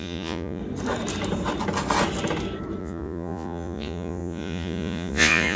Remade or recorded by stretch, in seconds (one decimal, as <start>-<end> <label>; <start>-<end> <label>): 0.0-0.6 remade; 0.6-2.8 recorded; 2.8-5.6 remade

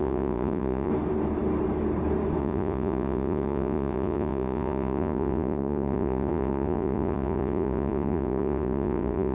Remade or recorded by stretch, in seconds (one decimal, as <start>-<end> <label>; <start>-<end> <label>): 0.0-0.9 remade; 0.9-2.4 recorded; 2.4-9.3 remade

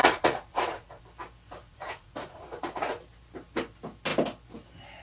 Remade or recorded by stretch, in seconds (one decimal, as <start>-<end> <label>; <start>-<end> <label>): 0.0-1.0 remade; 1.0-1.7 recorded; 1.7-3.0 remade; 3.0-5.0 recorded

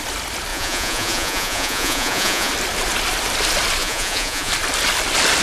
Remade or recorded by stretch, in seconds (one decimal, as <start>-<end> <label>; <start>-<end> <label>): 0.0-0.5 recorded; 0.5-2.5 remade; 2.5-3.8 recorded; 3.8-4.5 remade; 4.5-5.4 recorded

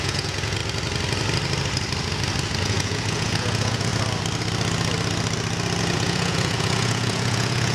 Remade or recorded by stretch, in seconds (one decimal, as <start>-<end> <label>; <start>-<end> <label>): 0.0-0.6 remade; 0.6-2.6 recorded; 2.6-3.9 remade; 3.9-5.8 recorded; 5.8-7.7 remade

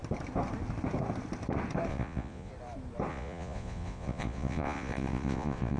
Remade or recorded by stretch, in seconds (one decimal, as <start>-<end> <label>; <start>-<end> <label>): 0.0-1.9 recorded; 1.9-2.5 remade; 2.5-3.1 recorded; 3.1-5.8 remade

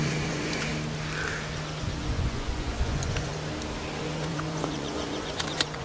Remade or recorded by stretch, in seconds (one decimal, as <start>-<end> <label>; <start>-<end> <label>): 0.0-0.7 remade; 0.7-1.8 recorded; 1.8-3.3 remade; 3.3-4.0 recorded; 4.0-5.8 remade

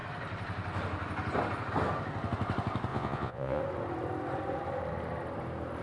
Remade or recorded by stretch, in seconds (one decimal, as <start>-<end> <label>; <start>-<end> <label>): 0.0-2.9 recorded; 2.9-3.6 remade; 3.6-5.8 recorded